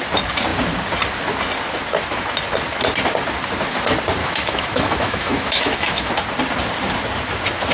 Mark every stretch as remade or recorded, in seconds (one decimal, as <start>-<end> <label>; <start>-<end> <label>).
0.0-4.2 recorded; 4.2-6.1 remade; 6.1-7.7 recorded